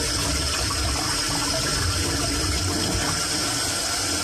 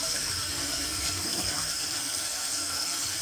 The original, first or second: first